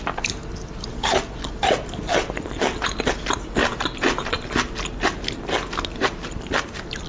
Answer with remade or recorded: recorded